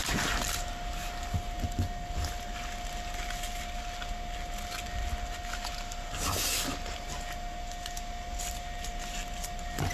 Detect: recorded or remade recorded